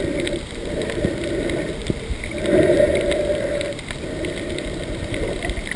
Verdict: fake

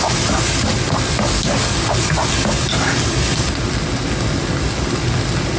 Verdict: real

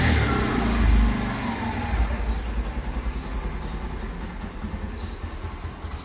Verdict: real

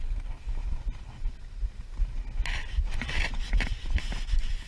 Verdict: real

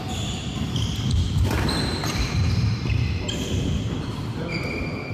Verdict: fake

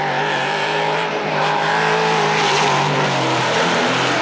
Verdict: fake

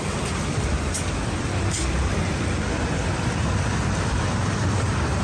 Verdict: fake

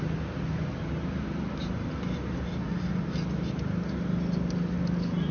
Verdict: real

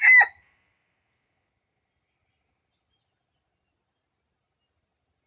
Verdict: real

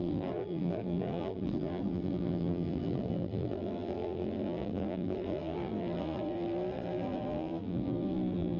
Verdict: fake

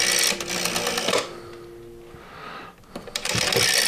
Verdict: real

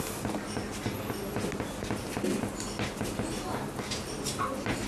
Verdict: real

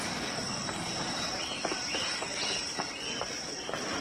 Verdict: fake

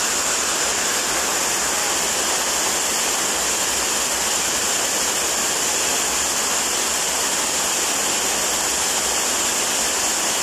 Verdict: real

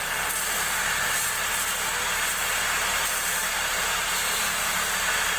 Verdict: real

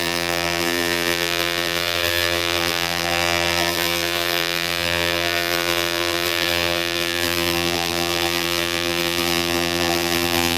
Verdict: fake